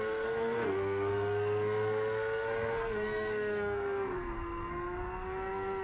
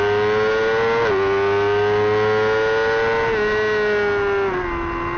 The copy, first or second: first